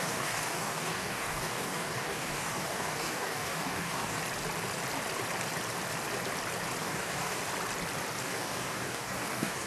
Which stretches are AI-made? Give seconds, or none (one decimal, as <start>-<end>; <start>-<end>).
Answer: 0.0-4.2; 6.8-7.4; 8.2-9.7